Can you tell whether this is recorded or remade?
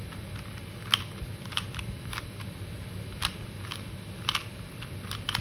remade